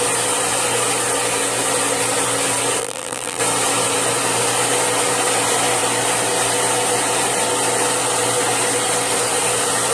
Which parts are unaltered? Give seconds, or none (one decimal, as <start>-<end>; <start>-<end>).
0.0-2.8; 3.4-9.9

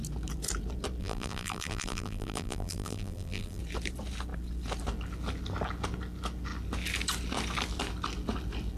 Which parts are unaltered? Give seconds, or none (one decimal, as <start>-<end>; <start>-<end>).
0.0-1.0; 3.6-8.8